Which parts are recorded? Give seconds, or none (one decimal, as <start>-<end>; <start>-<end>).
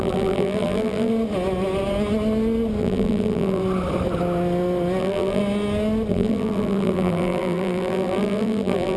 1.1-2.8; 3.6-5.0; 5.4-6.1